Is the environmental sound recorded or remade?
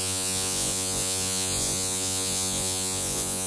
remade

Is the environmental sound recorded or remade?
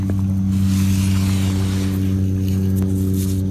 recorded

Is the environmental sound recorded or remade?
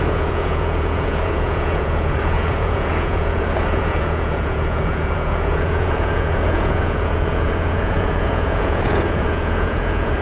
remade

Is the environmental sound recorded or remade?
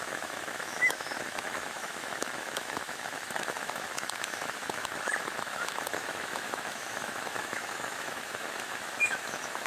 remade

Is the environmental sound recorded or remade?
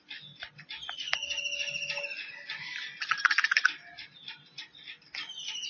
recorded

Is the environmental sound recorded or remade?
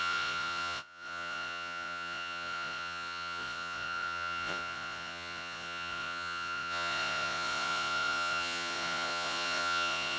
remade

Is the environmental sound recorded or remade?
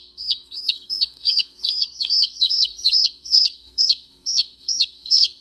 remade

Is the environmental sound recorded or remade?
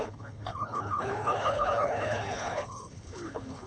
remade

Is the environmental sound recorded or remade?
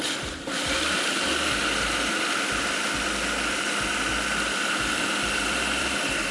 recorded